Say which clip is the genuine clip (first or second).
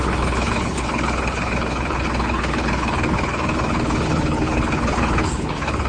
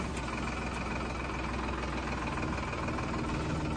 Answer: second